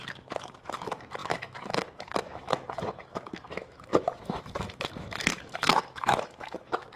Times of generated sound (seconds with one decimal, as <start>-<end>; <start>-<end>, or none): 0.0-7.0